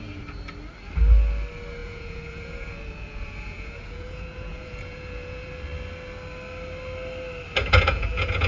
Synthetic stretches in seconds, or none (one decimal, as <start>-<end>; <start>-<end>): 1.8-5.5; 7.6-8.5